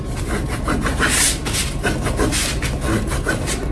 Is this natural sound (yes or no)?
yes